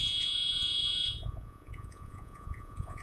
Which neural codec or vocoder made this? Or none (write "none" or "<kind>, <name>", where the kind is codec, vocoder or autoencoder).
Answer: vocoder, Vocos